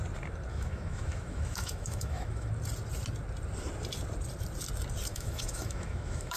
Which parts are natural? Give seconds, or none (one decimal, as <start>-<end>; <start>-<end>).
0.0-0.5; 2.5-5.1